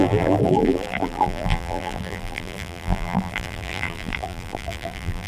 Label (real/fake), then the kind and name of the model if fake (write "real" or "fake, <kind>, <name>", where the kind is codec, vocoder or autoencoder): fake, vocoder, BigVGAN v2